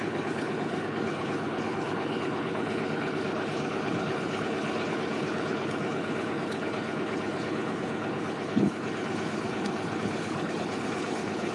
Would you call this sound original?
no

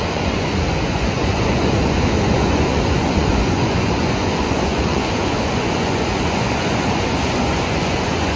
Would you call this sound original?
no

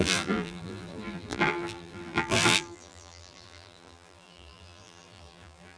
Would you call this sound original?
no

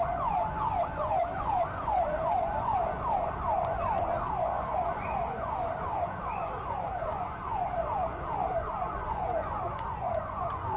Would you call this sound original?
no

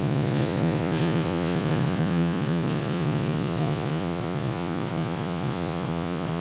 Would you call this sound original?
no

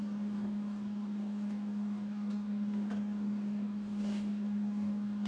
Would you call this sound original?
no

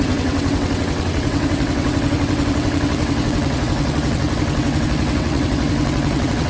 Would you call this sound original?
no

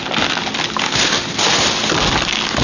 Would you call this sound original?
yes